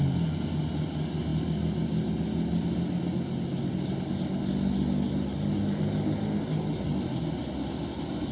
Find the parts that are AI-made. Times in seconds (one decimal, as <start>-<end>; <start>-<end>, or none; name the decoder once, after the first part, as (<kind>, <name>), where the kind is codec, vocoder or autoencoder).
none